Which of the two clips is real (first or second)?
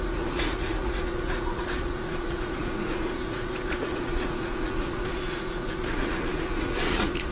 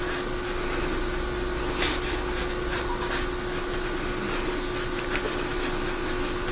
second